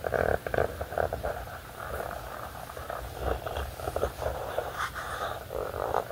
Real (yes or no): no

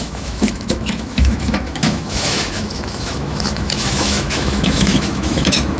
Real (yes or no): no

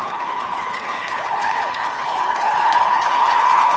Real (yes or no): no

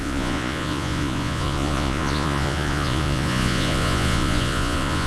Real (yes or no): no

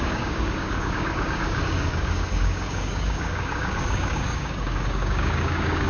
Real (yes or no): no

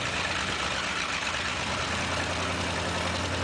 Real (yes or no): yes